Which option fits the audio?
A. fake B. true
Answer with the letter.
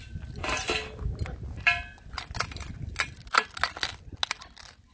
B